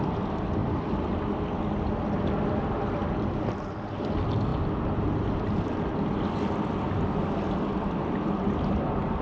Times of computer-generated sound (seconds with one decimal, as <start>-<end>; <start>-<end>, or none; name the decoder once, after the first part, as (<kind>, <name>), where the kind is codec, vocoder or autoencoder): none